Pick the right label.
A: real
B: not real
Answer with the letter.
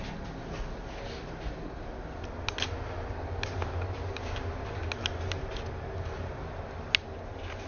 A